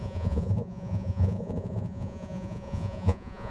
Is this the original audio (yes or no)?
no